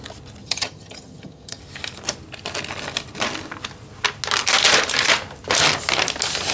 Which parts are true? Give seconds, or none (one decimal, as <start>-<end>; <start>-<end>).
0.0-0.4; 1.6-6.5